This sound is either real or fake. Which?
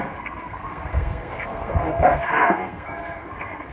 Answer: fake